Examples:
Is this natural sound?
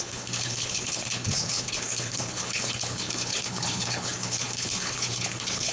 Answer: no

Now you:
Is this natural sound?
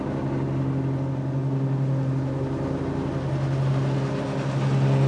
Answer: yes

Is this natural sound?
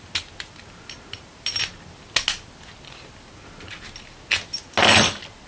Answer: yes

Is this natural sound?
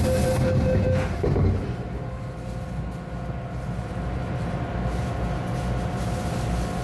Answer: yes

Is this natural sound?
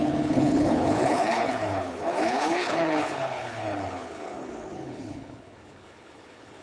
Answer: no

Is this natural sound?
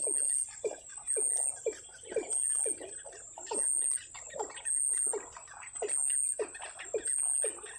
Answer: yes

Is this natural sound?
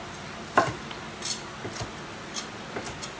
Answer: yes